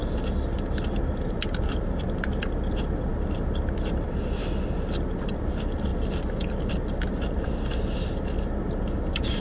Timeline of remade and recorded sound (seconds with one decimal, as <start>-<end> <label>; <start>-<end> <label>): 0.0-1.0 recorded; 1.0-9.4 remade